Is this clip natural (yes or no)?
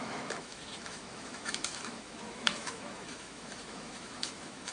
no